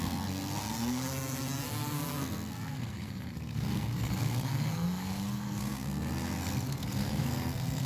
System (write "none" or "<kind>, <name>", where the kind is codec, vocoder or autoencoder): codec, SNAC